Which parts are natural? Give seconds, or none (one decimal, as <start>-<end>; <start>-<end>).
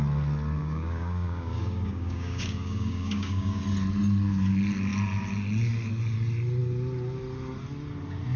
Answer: 0.0-0.6; 3.6-8.4